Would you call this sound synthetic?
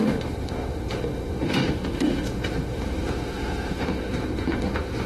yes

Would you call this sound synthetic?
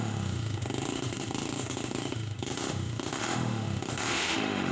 yes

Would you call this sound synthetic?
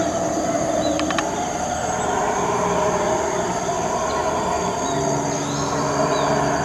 no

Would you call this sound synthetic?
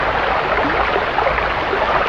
no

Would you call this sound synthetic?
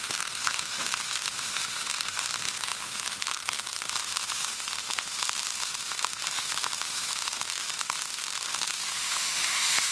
yes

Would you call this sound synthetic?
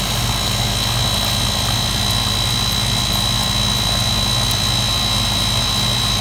no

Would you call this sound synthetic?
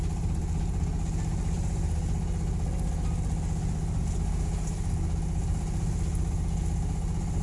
no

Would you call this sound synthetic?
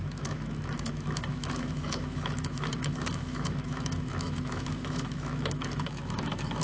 yes